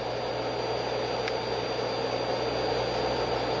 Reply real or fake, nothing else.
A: real